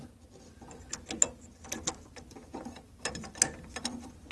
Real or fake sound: real